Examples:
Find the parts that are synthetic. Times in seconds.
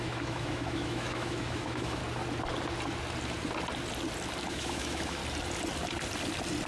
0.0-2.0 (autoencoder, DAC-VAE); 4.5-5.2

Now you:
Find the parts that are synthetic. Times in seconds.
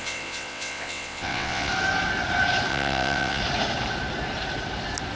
0.0-1.7 (vocoder, WaveNeXt); 2.7-3.4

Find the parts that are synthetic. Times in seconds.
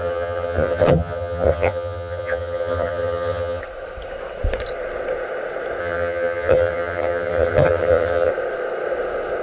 0.0-3.6 (vocoder, HiFi-GAN); 5.8-8.3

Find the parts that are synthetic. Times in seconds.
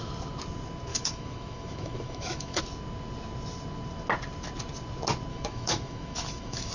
0.9-2.6 (autoencoder, DAC-VAE); 5.3-6.7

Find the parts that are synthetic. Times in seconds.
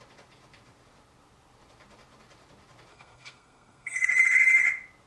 2.9-4.1 (codec, SNAC)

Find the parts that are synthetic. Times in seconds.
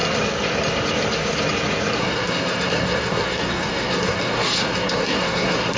2.0-5.8 (codec, SNAC)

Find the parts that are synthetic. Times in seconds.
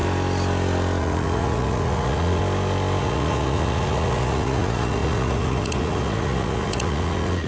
1.0-2.4 (vocoder, Vocos); 3.0-7.5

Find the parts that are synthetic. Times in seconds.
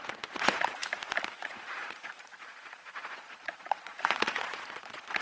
0.0-0.8 (vocoder, Vocos); 1.4-5.2